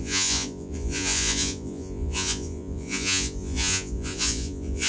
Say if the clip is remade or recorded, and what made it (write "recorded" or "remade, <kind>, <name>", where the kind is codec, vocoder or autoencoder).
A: remade, vocoder, Vocos